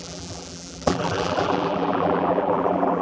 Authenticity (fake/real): fake